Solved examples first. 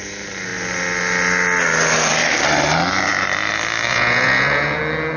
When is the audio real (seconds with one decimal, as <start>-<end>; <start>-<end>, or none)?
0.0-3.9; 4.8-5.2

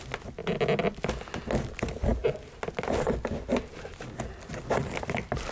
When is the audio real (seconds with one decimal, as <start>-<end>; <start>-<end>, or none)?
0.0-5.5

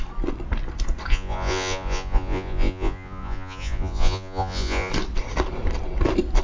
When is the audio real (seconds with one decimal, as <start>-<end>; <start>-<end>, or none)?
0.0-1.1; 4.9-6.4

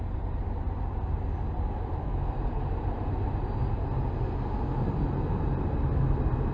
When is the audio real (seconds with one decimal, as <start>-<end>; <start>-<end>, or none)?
0.0-2.0; 2.6-6.5

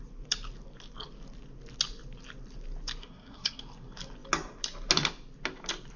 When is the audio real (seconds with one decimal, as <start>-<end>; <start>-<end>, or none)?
0.0-3.0; 3.6-6.0

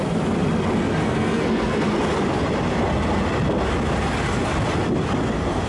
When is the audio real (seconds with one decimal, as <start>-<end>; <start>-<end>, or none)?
0.0-1.0; 1.9-5.7

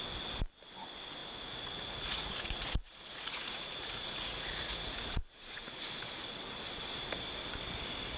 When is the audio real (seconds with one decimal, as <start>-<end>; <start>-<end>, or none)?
0.0-1.2; 5.8-8.2